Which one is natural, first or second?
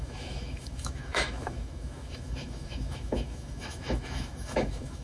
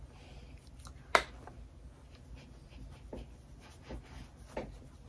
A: second